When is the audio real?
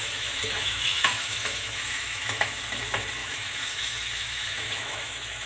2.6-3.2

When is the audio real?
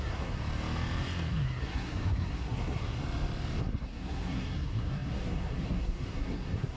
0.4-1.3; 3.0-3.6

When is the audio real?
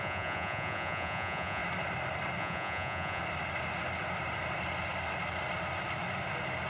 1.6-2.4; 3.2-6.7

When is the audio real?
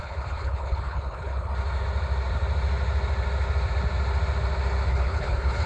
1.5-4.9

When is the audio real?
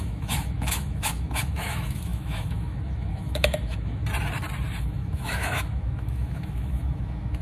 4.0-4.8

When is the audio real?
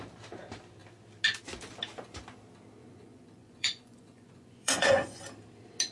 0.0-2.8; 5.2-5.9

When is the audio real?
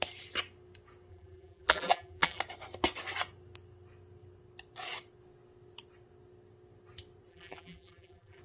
0.0-1.1; 2.4-7.3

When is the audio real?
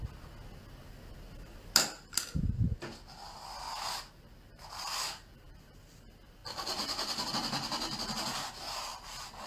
0.0-6.4; 7.3-9.5